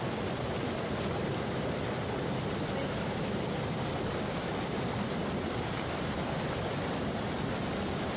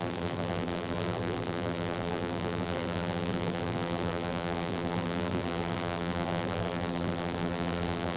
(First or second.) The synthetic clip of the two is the second